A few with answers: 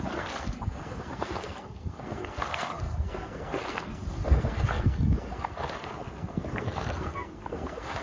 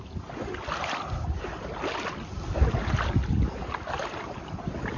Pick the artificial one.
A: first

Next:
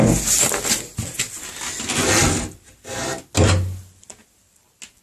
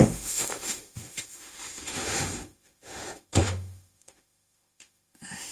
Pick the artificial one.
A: second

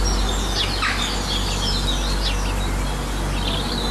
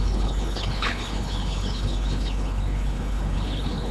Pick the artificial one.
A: second